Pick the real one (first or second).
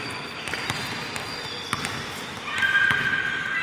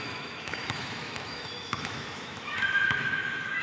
first